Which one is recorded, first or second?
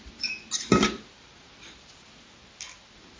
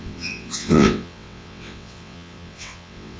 first